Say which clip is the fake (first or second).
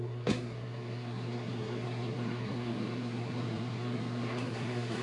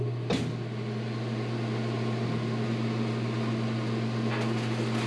first